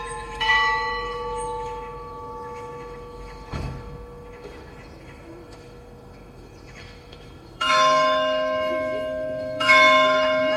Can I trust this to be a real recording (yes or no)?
no